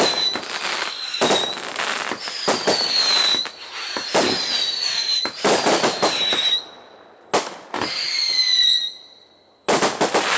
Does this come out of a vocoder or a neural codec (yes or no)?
no